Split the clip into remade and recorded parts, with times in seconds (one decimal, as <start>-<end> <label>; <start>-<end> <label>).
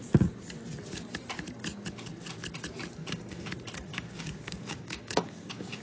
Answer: 0.0-3.0 recorded; 3.0-3.5 remade; 3.5-3.9 recorded; 3.9-5.8 remade